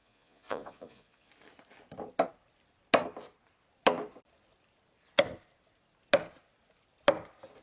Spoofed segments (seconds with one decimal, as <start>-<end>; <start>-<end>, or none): 0.0-1.3